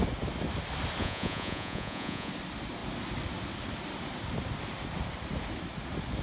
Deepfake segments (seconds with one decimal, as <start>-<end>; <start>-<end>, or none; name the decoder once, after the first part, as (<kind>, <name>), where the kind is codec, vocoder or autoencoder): 1.0-2.3 (vocoder, Vocos)